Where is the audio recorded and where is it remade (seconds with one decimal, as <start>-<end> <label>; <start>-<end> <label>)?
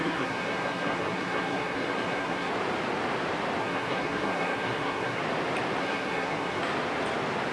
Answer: 0.0-2.5 remade; 2.5-3.6 recorded; 3.6-5.2 remade; 5.2-5.8 recorded; 5.8-6.6 remade; 6.6-7.5 recorded